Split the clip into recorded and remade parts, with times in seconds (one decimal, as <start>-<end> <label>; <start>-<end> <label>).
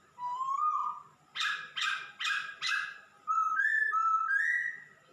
0.0-5.1 recorded